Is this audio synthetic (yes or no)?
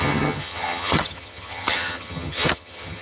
yes